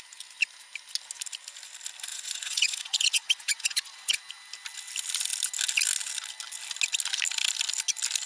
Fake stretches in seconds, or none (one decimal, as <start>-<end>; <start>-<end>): 2.1-4.2